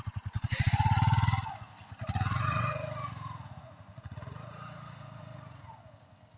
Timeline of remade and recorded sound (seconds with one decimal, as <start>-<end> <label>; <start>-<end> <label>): 0.0-2.3 recorded; 2.3-5.7 remade; 5.7-6.4 recorded